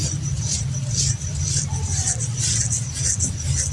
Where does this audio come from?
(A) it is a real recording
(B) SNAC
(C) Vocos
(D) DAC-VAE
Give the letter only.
A